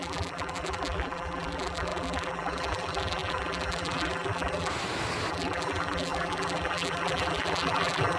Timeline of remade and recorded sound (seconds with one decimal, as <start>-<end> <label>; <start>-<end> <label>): 0.0-4.7 remade; 4.7-5.3 recorded; 5.3-8.2 remade